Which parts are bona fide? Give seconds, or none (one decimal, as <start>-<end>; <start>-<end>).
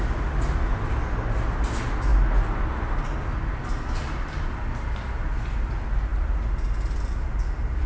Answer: 0.0-7.9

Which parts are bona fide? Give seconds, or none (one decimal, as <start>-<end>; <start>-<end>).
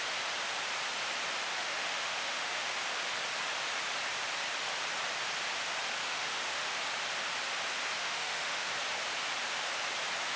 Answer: 0.0-1.6; 2.7-6.0; 6.8-8.0; 8.7-10.4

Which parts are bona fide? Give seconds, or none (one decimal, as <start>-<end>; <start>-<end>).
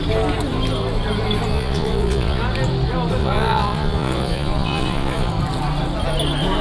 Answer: 0.0-1.5; 2.4-3.2; 5.3-6.6